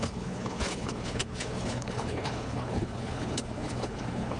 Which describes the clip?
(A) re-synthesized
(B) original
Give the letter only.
A